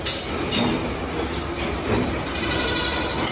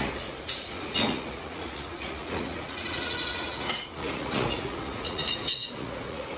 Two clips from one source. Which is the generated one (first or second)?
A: second